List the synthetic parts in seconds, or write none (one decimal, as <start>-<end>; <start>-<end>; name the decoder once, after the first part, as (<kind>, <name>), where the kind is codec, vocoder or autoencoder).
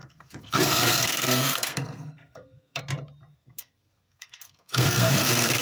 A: 0.0-2.8 (codec, SNAC); 3.3-5.6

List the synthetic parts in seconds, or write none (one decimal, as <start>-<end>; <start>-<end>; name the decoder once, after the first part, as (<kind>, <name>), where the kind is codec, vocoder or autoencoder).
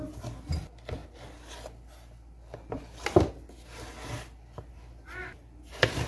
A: none